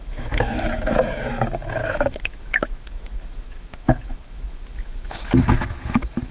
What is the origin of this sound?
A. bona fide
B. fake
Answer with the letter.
B